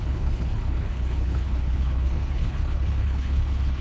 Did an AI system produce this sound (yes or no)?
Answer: yes